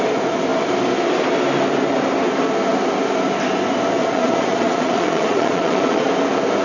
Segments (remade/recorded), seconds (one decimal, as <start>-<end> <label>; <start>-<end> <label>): 0.0-4.0 recorded; 4.0-6.1 remade; 6.1-6.6 recorded